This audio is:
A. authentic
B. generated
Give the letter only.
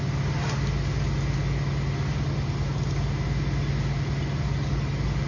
A